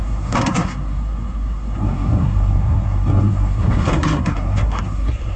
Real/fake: fake